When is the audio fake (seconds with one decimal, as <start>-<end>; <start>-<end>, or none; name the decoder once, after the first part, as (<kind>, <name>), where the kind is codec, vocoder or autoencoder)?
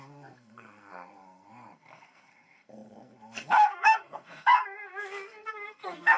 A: 0.0-6.2 (codec, SNAC)